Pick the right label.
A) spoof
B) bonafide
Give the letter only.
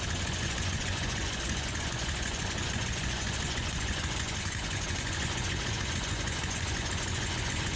A